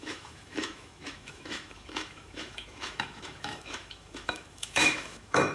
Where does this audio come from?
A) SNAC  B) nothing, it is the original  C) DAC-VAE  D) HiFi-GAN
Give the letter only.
C